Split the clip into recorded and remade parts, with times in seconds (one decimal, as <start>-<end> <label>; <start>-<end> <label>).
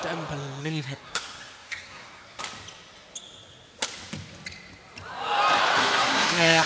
0.0-0.6 recorded; 0.6-2.4 remade; 2.4-5.8 recorded; 5.8-6.7 remade